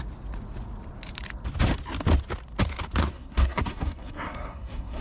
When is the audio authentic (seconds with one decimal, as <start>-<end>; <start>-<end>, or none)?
0.0-3.0